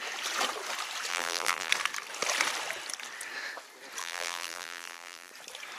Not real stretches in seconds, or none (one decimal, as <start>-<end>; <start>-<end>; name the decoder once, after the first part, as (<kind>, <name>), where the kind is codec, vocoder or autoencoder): 1.1-1.7 (vocoder, BigVGAN v2); 4.0-5.3